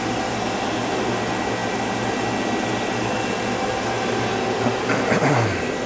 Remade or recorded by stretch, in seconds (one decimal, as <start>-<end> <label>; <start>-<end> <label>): 0.0-5.9 recorded